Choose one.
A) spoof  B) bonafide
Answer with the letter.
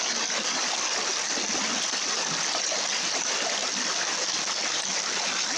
B